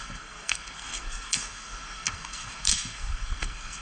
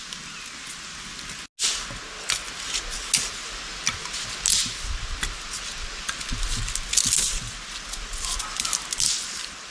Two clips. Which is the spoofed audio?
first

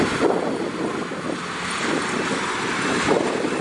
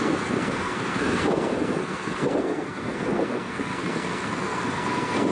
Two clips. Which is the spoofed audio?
second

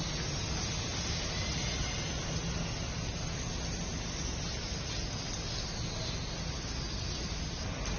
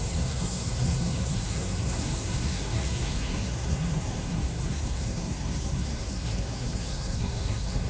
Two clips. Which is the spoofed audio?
second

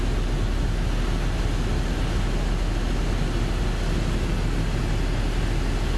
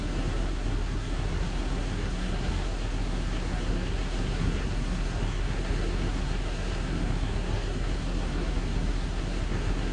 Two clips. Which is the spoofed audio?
second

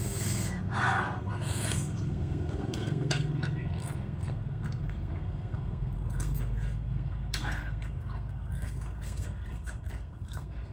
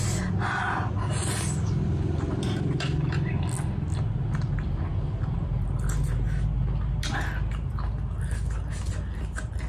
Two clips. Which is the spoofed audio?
first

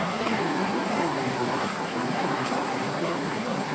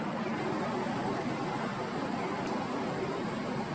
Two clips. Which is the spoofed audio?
first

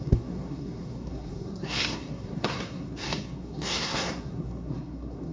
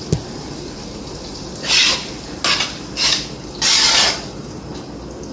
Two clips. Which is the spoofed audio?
first